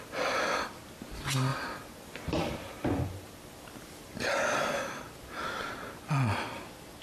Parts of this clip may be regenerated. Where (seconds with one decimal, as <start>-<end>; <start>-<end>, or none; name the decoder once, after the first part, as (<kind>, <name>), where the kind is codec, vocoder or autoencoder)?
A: 1.5-4.9 (vocoder, BigVGAN v2)